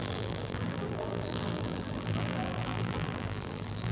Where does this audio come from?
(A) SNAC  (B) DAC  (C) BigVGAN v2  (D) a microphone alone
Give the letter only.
C